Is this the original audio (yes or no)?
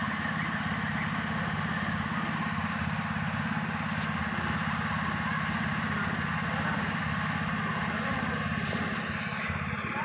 yes